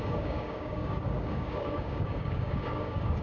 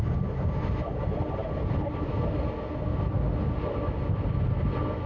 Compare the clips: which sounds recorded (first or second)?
second